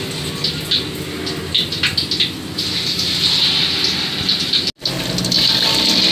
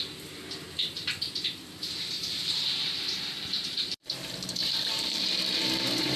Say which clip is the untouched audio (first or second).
first